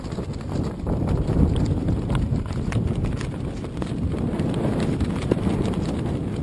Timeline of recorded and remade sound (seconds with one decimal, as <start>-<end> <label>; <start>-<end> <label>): 0.0-1.8 recorded; 1.8-3.0 remade; 3.0-4.6 recorded; 4.6-5.5 remade; 5.5-6.4 recorded